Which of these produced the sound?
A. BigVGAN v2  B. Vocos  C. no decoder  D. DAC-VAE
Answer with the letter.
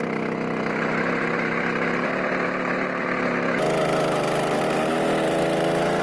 C